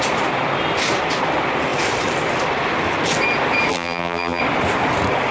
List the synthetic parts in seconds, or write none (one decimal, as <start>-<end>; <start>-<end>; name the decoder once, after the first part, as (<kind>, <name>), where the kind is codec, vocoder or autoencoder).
3.7-4.4 (vocoder, BigVGAN v2)